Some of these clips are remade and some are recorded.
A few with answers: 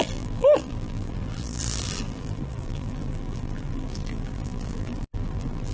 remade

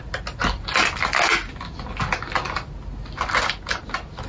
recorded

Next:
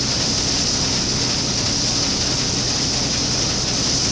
recorded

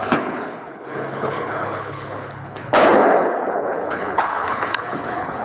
remade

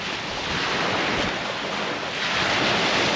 recorded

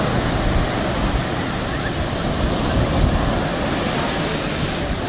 recorded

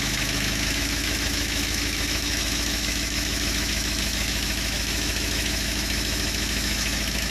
remade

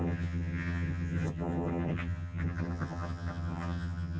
remade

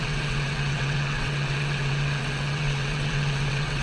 remade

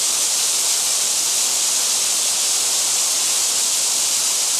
recorded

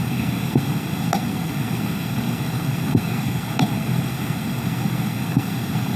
remade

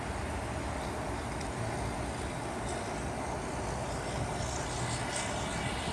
recorded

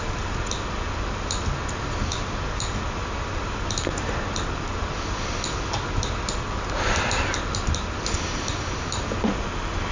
recorded